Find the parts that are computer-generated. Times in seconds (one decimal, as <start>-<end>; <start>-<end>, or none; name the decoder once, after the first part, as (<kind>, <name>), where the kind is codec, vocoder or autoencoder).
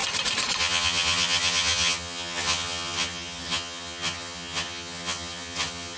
0.6-6.0 (vocoder, HiFi-GAN)